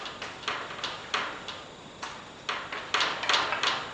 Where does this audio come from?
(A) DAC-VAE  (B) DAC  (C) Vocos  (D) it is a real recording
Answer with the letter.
D